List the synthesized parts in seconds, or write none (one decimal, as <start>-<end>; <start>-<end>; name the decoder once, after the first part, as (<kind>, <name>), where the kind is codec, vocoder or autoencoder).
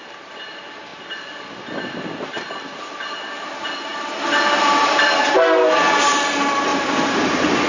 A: 3.9-5.2 (vocoder, BigVGAN v2); 6.7-7.3